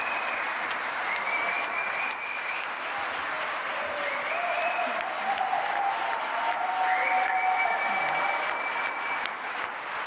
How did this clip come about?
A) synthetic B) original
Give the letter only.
B